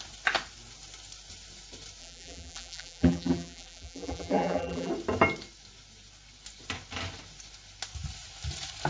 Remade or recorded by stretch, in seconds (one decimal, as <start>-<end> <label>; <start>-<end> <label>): 0.0-2.0 recorded; 2.0-4.9 remade; 4.9-8.9 recorded